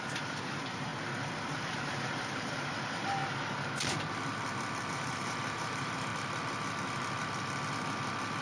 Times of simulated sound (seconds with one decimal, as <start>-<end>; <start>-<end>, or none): 0.0-0.9; 1.6-3.2; 4.9-6.1

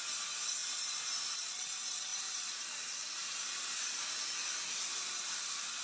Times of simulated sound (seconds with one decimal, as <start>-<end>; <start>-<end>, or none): 0.6-1.7; 2.1-5.8